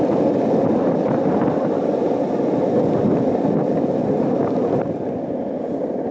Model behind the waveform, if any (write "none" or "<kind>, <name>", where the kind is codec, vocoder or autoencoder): none